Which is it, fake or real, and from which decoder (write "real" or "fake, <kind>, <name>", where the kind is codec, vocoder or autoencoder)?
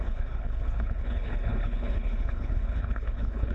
fake, codec, HILCodec